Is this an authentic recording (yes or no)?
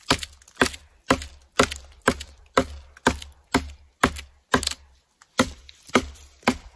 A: yes